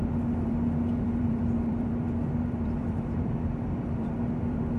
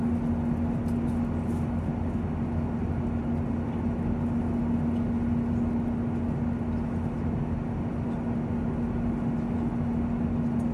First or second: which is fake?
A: first